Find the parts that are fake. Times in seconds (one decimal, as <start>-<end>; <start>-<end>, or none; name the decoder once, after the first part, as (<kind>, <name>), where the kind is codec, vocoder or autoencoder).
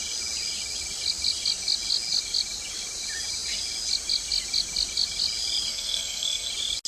5.7-6.5 (codec, SNAC)